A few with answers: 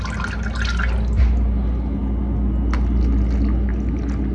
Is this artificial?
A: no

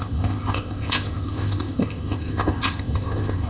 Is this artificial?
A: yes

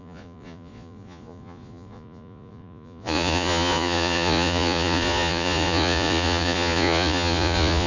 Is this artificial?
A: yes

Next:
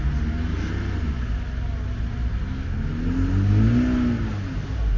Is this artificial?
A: no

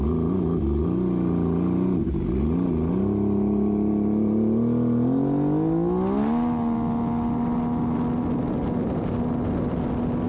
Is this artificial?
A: no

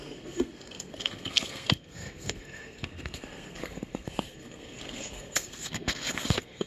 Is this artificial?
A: yes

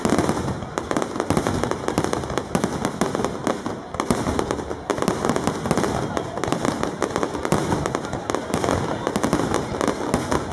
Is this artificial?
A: no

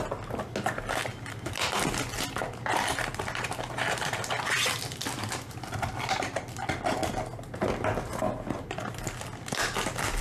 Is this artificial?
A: no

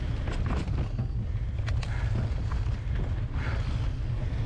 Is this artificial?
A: no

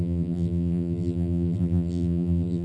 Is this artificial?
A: yes